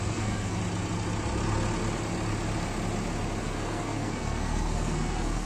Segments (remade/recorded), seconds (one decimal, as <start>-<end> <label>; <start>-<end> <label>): 0.0-0.6 remade; 0.6-3.4 recorded; 3.4-5.5 remade